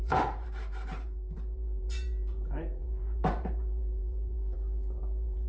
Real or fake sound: fake